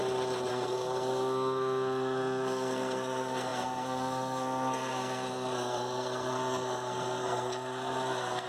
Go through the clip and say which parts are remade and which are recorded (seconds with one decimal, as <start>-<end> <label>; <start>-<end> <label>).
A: 0.0-0.5 recorded; 0.5-8.5 remade